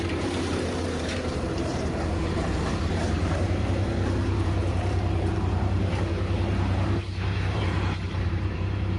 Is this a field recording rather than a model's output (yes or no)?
no